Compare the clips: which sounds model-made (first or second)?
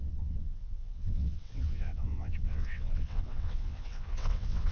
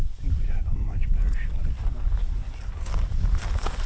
first